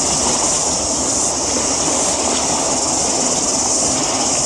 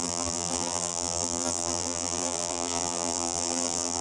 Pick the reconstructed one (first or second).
second